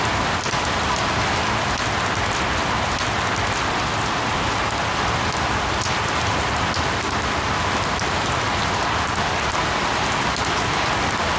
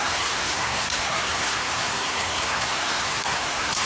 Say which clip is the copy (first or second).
second